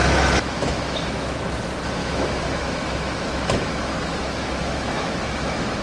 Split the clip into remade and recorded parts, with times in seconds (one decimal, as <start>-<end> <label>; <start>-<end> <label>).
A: 0.0-1.4 remade; 1.4-2.0 recorded; 2.0-5.8 remade